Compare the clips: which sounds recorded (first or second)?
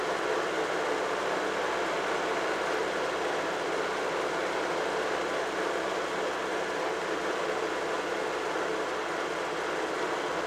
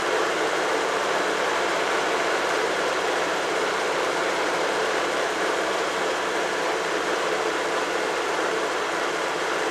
first